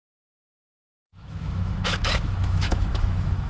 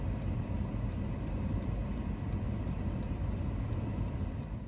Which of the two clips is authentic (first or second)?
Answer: second